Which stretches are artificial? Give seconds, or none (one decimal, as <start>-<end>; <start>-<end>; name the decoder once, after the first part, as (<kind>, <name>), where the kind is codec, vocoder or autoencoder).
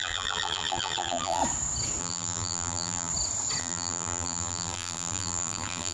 0.0-1.4 (vocoder, BigVGAN v2); 2.0-3.1; 3.6-5.9